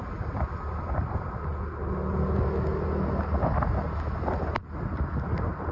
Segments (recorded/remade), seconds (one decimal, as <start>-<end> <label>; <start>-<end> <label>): 0.0-1.5 remade; 1.5-4.9 recorded; 4.9-5.7 remade